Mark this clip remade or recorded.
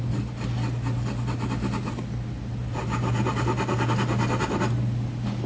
recorded